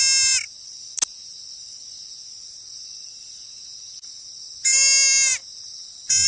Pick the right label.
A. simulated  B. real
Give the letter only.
B